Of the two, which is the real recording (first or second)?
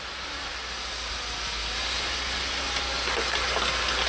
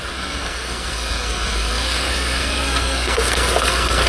first